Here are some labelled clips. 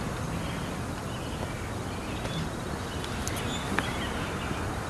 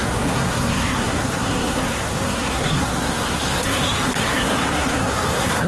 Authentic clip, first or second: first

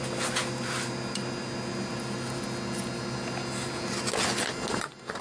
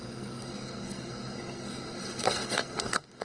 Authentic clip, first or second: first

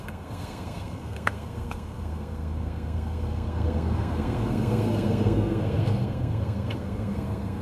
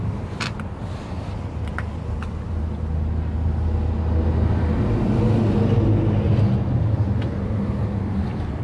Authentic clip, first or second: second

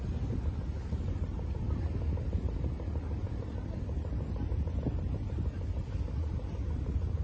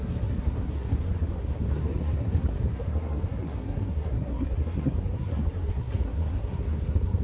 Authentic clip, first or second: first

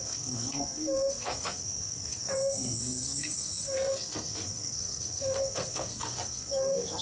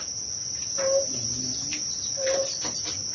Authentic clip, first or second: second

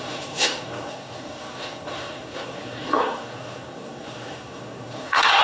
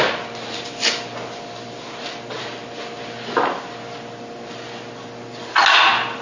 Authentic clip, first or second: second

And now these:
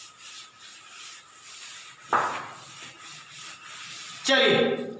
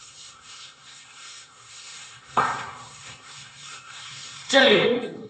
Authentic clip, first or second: first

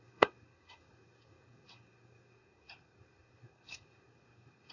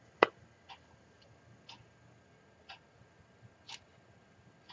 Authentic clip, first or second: second